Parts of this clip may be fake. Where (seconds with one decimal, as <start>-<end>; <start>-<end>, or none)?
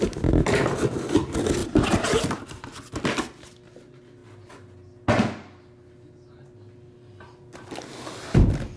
none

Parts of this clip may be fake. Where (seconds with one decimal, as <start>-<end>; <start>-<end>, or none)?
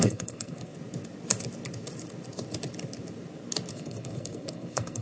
0.0-0.7; 3.7-5.0